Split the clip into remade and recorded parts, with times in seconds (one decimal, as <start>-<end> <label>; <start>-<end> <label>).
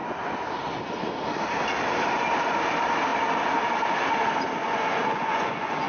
0.0-4.6 recorded; 4.6-5.9 remade